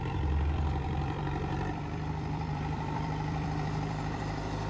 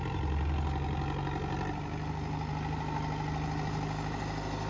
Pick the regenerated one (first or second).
first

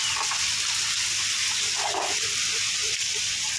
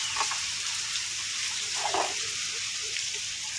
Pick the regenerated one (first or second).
second